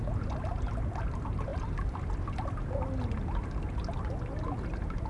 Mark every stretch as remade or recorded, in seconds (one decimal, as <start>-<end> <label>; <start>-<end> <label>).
0.0-5.1 recorded